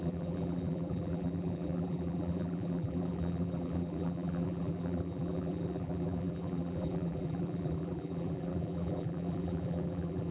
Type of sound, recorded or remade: remade